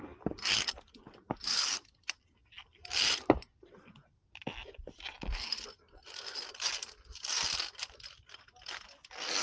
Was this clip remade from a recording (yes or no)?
no